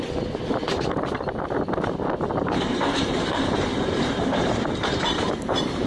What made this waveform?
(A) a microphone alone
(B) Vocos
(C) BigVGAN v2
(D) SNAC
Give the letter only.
C